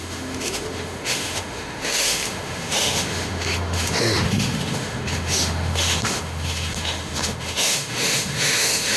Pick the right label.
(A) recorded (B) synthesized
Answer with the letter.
B